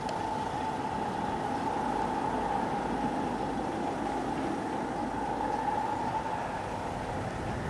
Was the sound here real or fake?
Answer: real